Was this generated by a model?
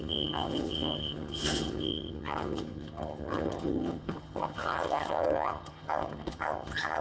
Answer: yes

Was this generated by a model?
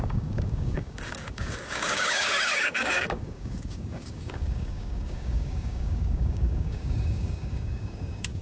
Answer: yes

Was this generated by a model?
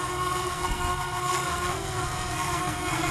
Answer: yes